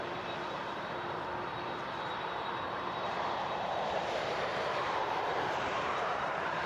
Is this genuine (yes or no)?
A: no